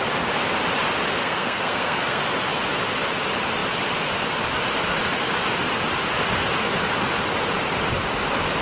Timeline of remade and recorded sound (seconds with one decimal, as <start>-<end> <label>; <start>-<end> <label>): 0.0-1.2 recorded; 1.2-2.2 remade; 2.2-8.6 recorded